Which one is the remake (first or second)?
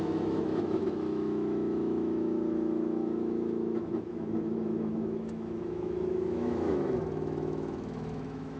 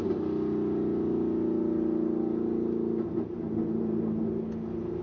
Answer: first